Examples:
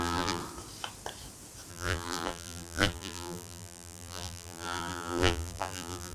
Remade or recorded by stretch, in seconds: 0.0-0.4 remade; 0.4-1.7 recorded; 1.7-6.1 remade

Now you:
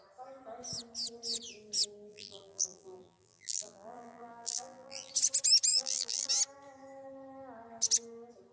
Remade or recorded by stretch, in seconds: 0.0-2.1 recorded; 2.1-5.1 remade; 5.1-5.7 recorded; 5.7-6.3 remade; 6.3-8.5 recorded

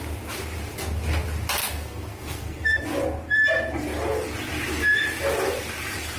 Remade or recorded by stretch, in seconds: 0.0-1.6 recorded; 1.6-2.8 remade; 2.8-6.2 recorded